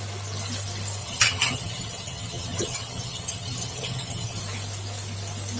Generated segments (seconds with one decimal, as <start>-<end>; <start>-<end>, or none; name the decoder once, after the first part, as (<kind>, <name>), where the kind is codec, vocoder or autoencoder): 1.0-4.4 (vocoder, HiFi-GAN)